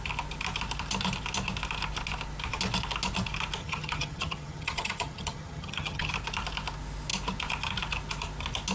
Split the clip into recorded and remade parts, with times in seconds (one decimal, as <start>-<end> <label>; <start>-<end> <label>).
0.0-3.6 recorded; 3.6-6.1 remade; 6.1-8.7 recorded